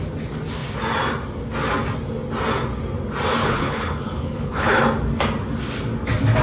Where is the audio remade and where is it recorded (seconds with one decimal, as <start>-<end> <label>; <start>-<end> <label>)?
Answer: 0.0-3.4 recorded; 3.4-4.8 remade; 4.8-6.4 recorded